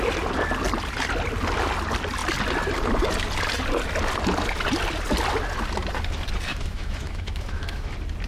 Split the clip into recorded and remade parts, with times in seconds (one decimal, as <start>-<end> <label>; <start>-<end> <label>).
0.0-6.5 recorded; 6.5-7.9 remade; 7.9-8.3 recorded